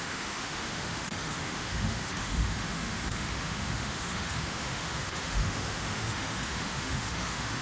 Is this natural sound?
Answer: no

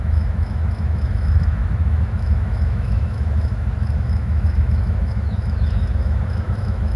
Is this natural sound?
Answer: no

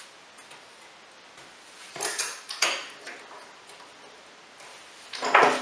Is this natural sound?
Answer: yes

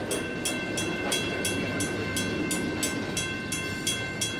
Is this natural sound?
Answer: yes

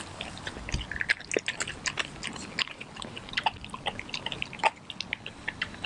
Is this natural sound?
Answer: yes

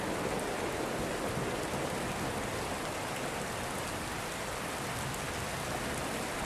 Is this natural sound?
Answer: yes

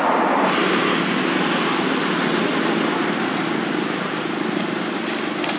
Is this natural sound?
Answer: yes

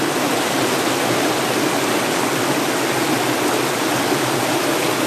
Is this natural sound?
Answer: yes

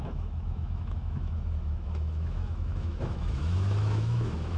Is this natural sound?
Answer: no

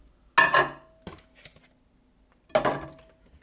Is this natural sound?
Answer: yes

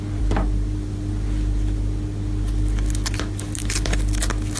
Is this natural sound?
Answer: yes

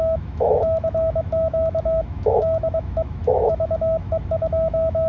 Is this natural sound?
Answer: no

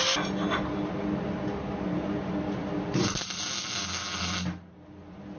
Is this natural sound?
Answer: yes